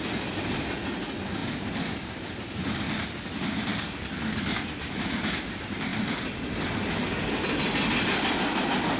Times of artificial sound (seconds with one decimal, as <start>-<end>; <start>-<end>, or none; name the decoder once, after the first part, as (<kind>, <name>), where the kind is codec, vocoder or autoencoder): 3.7-4.6 (codec, DAC)